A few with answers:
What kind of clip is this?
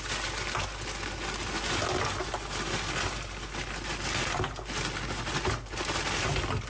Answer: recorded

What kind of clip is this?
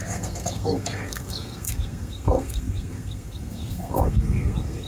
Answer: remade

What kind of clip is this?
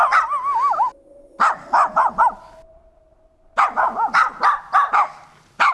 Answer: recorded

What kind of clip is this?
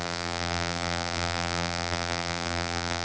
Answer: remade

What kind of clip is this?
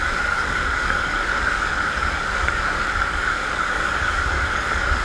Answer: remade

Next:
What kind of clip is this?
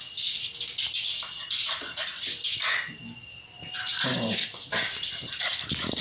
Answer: recorded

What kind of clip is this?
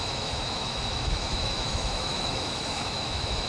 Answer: remade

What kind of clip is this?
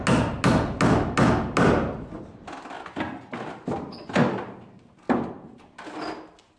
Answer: recorded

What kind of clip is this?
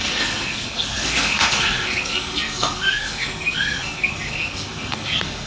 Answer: remade